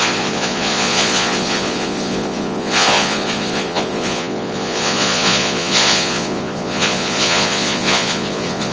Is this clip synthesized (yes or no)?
yes